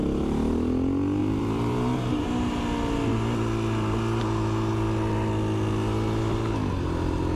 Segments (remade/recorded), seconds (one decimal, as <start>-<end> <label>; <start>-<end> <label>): 0.0-1.2 recorded; 1.2-2.6 remade; 2.6-7.4 recorded